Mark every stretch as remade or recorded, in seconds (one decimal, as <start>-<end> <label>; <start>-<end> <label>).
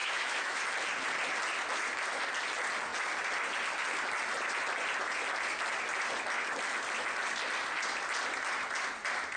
0.0-0.6 remade; 0.6-9.4 recorded